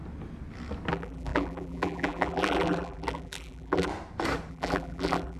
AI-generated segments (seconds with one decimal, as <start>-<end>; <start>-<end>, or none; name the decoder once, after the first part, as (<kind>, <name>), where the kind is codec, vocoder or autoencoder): 0.9-3.9 (vocoder, BigVGAN v2); 4.5-5.4

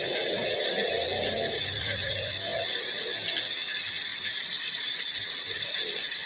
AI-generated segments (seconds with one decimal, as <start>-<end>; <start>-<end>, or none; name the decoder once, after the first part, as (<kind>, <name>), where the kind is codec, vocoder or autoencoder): 4.1-5.0 (vocoder, BigVGAN v2)

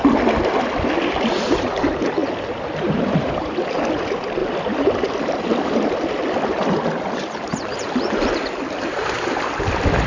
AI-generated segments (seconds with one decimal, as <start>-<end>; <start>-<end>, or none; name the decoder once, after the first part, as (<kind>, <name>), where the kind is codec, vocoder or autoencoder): 2.2-3.4 (vocoder, BigVGAN v2); 4.4-5.7

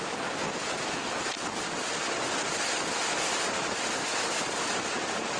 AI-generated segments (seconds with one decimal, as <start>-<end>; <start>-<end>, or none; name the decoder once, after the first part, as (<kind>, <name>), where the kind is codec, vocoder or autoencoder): none

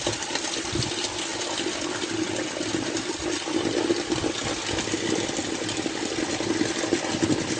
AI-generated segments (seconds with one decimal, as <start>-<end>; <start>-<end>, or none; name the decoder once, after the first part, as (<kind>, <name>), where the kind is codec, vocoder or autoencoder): none

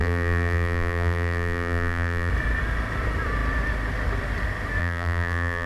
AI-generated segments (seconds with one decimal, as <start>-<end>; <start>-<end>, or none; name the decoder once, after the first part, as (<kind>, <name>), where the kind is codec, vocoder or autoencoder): 0.0-2.3 (vocoder, BigVGAN v2); 4.8-5.7

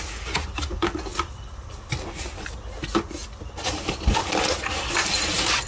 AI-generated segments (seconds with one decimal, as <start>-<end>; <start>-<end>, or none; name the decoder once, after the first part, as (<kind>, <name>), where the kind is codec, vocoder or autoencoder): 1.1-1.7 (vocoder, BigVGAN v2); 3.2-4.7